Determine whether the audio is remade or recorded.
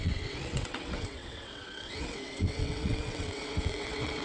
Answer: remade